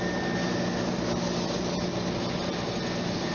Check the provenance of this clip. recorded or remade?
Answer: recorded